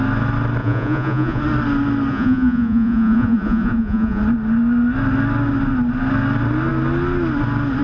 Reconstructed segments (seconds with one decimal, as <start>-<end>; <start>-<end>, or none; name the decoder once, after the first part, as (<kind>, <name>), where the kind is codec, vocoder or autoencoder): 0.6-1.4 (vocoder, Vocos); 2.1-4.2